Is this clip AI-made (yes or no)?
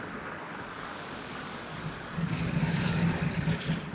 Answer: yes